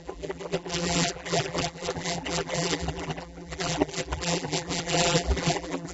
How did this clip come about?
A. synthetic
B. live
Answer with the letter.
A